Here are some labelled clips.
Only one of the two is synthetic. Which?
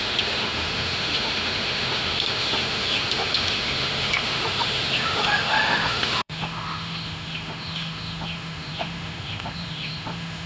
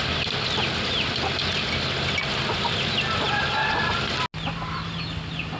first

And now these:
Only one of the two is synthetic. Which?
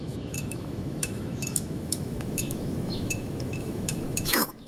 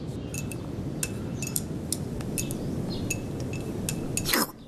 first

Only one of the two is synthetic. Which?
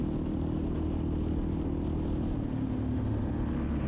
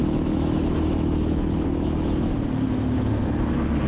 second